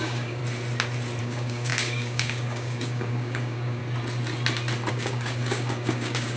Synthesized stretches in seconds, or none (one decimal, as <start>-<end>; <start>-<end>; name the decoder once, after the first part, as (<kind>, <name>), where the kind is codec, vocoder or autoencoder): 0.0-0.4 (codec, DAC); 1.2-3.8; 4.9-6.4